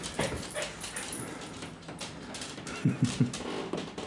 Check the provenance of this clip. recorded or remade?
recorded